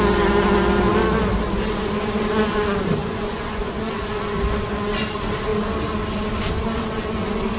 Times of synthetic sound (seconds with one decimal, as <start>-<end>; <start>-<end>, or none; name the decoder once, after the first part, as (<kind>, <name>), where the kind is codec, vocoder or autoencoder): 3.0-3.7 (vocoder, Vocos)